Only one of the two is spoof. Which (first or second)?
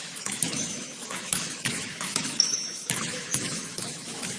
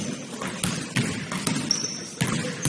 first